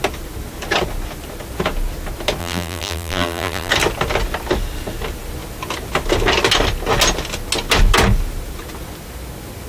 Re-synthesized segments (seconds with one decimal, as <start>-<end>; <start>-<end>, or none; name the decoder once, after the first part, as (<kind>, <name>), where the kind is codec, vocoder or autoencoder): 2.4-3.7 (vocoder, BigVGAN v2)